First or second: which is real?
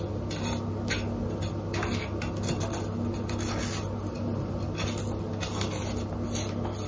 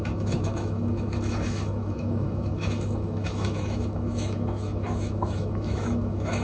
first